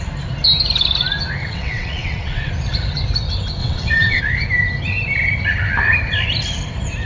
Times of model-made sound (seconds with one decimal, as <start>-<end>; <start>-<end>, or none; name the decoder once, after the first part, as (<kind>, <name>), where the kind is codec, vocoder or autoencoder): 1.4-2.5 (vocoder, WaveNeXt); 3.6-4.2